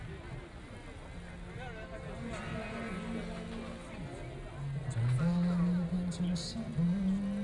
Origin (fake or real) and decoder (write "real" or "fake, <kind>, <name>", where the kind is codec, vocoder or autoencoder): real